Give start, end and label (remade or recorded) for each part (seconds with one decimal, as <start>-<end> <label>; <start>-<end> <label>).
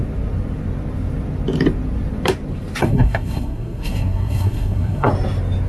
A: 0.0-2.8 recorded; 2.8-5.1 remade; 5.1-5.7 recorded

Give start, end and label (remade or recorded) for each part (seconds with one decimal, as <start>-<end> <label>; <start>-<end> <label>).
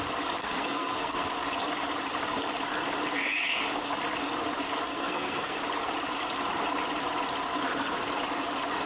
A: 0.0-0.4 recorded; 0.4-1.3 remade; 1.3-4.9 recorded; 4.9-5.6 remade; 5.6-8.9 recorded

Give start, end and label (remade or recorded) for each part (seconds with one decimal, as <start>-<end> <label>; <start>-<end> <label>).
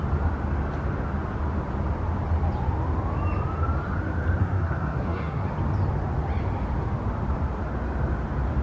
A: 0.0-4.4 recorded; 4.4-5.5 remade; 5.5-8.6 recorded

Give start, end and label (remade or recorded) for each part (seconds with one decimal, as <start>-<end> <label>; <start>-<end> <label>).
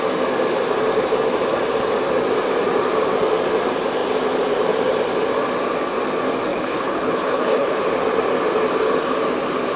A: 0.0-6.5 recorded; 6.5-7.8 remade; 7.8-9.8 recorded